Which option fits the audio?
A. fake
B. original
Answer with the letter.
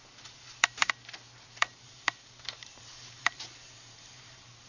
A